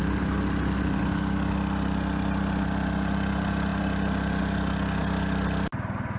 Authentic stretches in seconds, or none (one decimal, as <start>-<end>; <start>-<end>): 0.0-6.2